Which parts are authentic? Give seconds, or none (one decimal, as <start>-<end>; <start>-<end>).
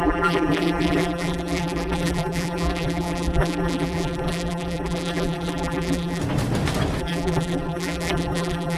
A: 6.2-7.0